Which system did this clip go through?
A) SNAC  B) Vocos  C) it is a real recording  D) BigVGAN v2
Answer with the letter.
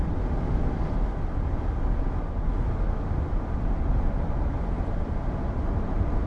C